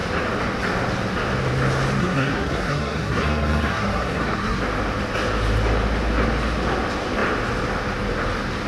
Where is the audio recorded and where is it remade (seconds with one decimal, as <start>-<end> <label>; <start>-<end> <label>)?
0.0-2.0 recorded; 2.0-4.6 remade; 4.6-8.7 recorded